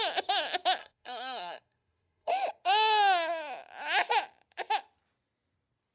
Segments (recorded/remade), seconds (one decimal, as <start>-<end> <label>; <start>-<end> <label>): 0.0-0.8 recorded; 0.8-2.3 remade; 2.3-5.9 recorded